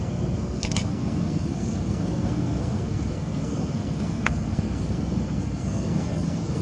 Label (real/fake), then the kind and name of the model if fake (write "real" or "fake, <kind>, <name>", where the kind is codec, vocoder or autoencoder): fake, codec, SNAC